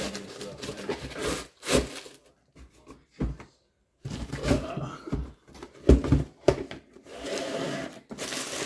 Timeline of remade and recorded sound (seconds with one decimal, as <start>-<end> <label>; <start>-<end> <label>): 0.0-1.2 remade; 1.2-6.4 recorded; 6.4-7.1 remade; 7.1-8.7 recorded